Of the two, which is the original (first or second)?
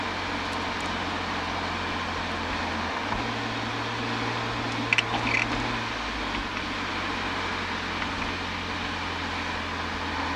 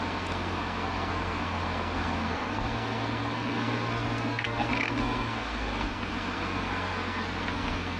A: first